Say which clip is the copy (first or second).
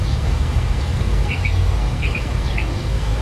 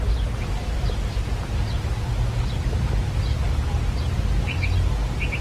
first